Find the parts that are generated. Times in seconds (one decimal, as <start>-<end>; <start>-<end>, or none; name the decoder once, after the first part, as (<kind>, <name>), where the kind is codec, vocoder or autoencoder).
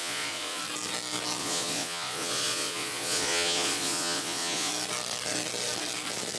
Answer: 0.0-0.6 (vocoder, Vocos); 1.4-4.7